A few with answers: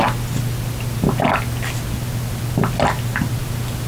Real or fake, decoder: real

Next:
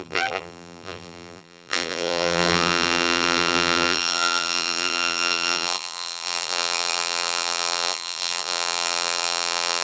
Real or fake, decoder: fake, vocoder, BigVGAN v2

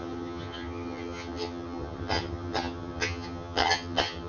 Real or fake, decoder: fake, vocoder, HiFi-GAN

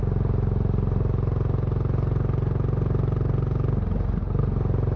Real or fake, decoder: real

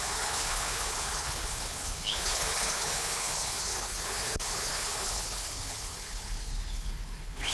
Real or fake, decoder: fake, codec, HILCodec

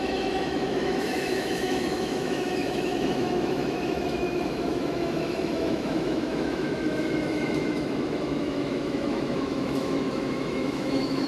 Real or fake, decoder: fake, autoencoder, DAC-VAE